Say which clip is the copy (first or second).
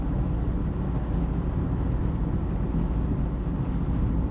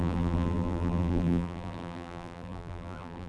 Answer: second